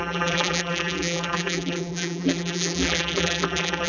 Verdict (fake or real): fake